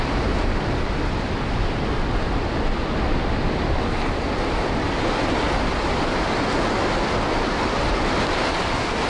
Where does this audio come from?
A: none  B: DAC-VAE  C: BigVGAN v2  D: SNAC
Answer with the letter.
A